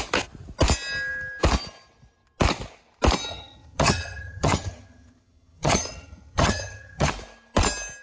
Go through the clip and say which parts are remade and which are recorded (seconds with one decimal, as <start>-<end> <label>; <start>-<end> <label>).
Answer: 0.0-3.3 recorded; 3.3-7.1 remade; 7.1-8.0 recorded